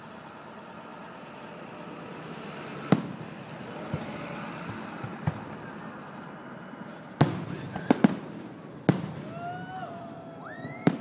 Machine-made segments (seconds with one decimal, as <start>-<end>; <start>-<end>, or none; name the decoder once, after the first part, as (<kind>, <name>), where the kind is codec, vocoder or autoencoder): none